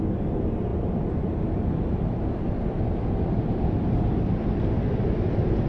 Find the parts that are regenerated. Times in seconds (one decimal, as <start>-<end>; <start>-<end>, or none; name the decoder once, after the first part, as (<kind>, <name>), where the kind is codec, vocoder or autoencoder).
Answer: none

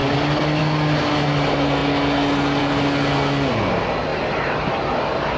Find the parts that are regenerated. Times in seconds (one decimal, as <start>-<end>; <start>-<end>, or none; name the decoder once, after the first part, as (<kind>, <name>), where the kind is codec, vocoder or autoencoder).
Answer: none

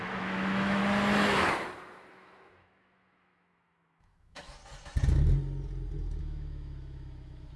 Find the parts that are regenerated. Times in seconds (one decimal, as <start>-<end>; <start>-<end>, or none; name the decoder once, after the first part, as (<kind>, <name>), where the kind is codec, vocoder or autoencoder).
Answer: 0.0-0.8 (autoencoder, DAC-VAE); 2.1-4.6; 6.2-7.6

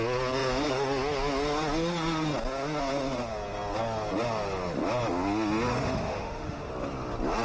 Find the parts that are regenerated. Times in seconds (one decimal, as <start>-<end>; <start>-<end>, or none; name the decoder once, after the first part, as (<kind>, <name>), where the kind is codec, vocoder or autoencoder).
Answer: 5.7-6.7 (autoencoder, DAC-VAE)

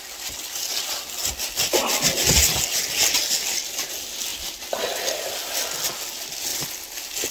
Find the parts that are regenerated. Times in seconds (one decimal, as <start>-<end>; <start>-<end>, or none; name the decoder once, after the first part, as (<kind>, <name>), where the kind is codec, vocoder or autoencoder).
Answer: none

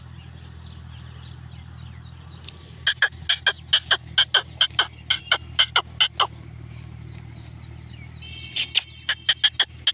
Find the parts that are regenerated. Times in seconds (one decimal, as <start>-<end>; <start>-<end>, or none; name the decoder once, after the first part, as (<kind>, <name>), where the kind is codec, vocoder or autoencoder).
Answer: none

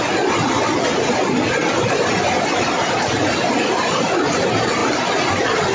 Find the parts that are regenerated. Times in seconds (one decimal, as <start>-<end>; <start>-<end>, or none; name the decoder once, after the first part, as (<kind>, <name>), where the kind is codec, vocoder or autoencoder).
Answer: none

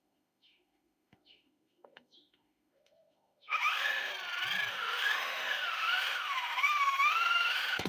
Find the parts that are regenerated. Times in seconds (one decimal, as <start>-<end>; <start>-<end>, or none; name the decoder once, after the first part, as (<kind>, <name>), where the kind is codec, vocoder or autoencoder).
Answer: 0.0-4.1 (autoencoder, DAC-VAE); 4.7-7.9